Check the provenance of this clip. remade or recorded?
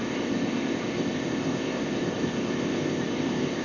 remade